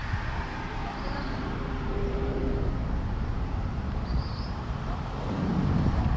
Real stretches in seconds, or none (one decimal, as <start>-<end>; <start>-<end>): 0.0-0.9; 2.4-3.1